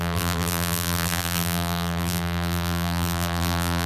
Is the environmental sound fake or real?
fake